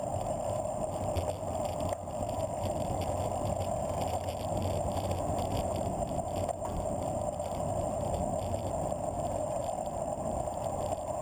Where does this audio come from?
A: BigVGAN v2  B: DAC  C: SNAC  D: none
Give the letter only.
A